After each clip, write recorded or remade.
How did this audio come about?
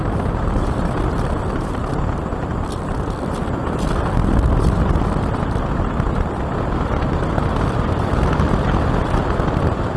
remade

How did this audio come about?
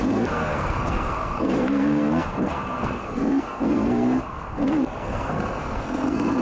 remade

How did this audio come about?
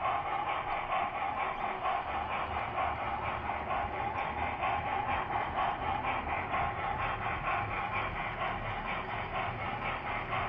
recorded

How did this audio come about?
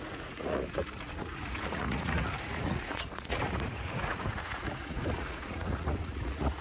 remade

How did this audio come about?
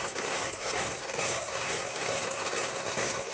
remade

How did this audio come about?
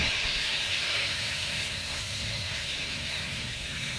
remade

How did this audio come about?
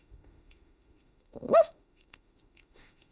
remade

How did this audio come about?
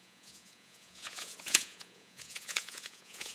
remade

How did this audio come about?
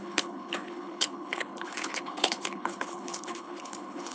remade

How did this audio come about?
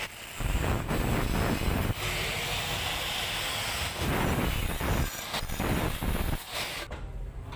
recorded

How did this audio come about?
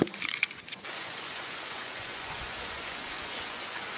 remade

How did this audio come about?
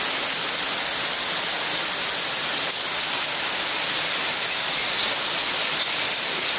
recorded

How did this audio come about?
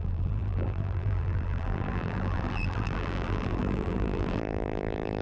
remade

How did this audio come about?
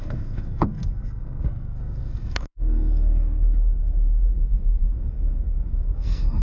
remade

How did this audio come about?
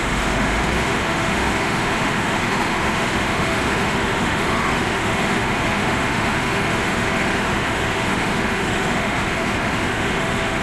remade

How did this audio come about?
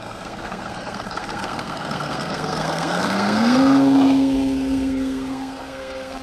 remade